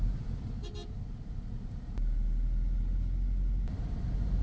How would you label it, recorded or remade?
recorded